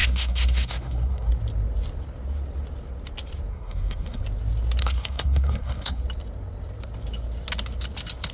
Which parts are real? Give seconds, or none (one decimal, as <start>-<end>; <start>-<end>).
1.3-3.5; 4.2-4.8; 6.0-8.3